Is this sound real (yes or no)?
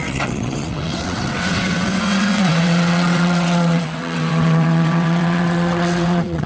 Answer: no